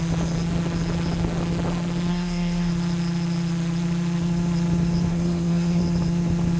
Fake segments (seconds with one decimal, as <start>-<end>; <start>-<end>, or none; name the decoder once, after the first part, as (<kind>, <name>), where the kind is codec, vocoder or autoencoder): 2.1-2.7 (codec, SNAC); 5.1-5.8